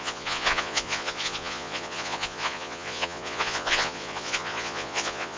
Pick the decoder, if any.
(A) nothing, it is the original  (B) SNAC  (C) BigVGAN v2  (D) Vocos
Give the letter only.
D